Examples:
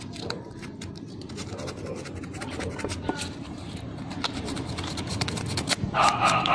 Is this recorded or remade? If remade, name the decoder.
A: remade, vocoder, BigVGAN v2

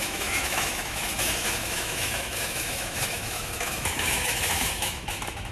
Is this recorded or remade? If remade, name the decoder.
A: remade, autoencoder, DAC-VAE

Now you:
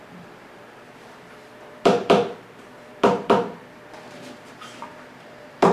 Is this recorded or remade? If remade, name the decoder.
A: remade, vocoder, BigVGAN v2